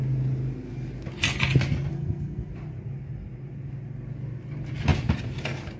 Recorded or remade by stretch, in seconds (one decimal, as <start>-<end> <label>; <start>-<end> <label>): 0.0-1.9 recorded; 1.9-2.5 remade; 2.5-5.8 recorded